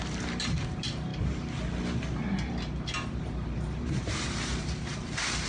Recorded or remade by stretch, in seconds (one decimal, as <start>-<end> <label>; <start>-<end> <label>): 0.0-1.1 remade; 1.1-3.7 recorded; 3.7-5.5 remade